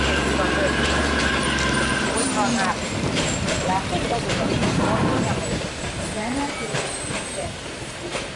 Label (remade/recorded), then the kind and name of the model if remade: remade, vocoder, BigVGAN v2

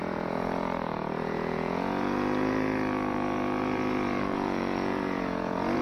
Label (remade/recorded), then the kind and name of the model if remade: remade, vocoder, Vocos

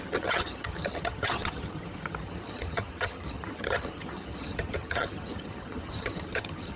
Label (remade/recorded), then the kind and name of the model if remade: remade, vocoder, HiFi-GAN